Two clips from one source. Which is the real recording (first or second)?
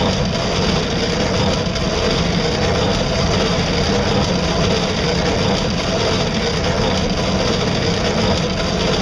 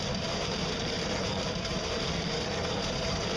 first